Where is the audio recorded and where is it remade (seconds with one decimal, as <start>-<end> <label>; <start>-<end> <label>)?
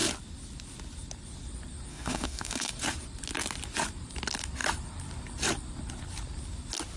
0.0-1.9 recorded; 1.9-2.7 remade; 2.7-7.0 recorded